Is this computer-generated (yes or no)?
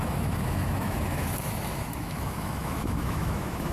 yes